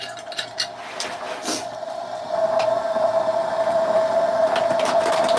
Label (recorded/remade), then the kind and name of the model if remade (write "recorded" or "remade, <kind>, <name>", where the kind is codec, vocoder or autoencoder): recorded